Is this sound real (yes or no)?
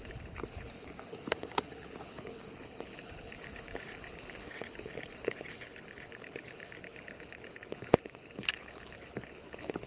no